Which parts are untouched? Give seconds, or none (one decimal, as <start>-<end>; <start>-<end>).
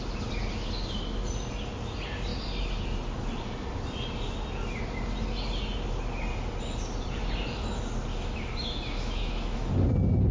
0.0-8.1; 9.7-10.3